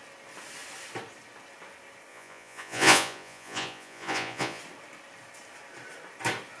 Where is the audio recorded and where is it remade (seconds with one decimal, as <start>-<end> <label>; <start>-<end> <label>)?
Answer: 0.0-2.1 recorded; 2.1-4.6 remade; 4.6-6.6 recorded